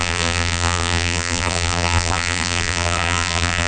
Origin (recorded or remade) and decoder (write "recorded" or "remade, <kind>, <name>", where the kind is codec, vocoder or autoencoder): remade, vocoder, BigVGAN v2